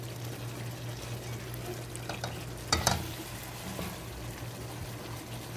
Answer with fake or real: real